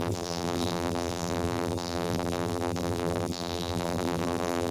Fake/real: fake